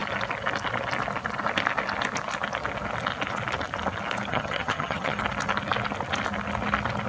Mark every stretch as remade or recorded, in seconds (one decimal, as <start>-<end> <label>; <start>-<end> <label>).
0.0-4.3 recorded; 4.3-5.2 remade; 5.2-7.1 recorded